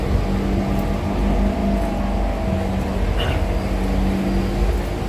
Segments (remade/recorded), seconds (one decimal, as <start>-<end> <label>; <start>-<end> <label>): 0.0-5.1 recorded